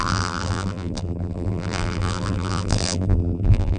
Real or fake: fake